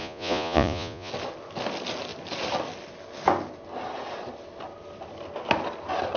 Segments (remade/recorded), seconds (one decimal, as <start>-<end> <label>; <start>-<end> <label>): 0.0-1.1 remade; 1.1-6.2 recorded